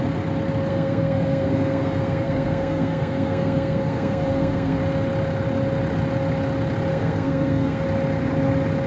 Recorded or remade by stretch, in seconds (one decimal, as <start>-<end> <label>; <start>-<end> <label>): 0.0-0.7 recorded; 0.7-4.8 remade; 4.8-6.9 recorded; 6.9-7.8 remade; 7.8-8.9 recorded